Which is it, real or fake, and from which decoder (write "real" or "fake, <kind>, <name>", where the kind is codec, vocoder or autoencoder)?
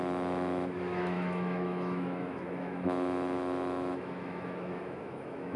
fake, autoencoder, DAC-VAE